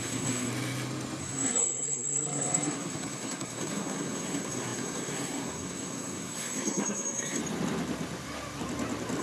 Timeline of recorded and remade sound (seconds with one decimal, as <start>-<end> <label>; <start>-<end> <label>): 0.0-0.5 remade; 0.5-1.2 recorded; 1.2-7.4 remade; 7.4-9.2 recorded